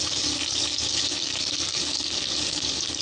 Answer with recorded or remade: remade